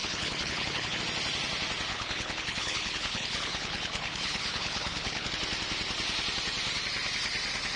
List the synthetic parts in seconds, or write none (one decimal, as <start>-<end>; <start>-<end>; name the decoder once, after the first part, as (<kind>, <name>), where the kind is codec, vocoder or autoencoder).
0.0-1.0 (codec, HILCodec); 1.9-5.3